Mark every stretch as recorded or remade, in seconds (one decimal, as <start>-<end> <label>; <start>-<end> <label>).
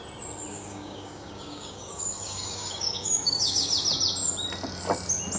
0.0-0.5 recorded; 0.5-3.7 remade; 3.7-5.4 recorded